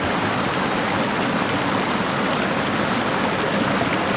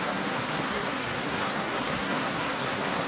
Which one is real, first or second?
first